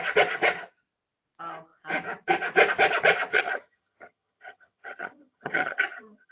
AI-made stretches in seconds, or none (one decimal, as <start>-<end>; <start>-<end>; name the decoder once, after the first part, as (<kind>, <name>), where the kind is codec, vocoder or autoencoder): 3.3-6.3 (vocoder, HiFi-GAN)